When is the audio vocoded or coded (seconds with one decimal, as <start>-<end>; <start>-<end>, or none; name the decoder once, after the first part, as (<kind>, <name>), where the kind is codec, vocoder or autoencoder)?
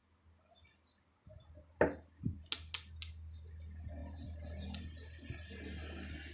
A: none